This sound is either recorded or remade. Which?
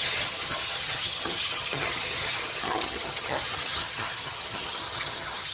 remade